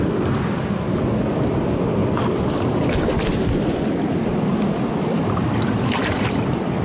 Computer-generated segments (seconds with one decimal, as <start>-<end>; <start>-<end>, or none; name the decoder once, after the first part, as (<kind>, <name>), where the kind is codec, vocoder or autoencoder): none